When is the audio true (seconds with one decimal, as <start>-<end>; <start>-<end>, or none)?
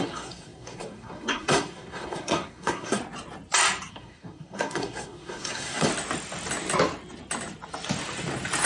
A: 3.0-3.9; 5.9-8.7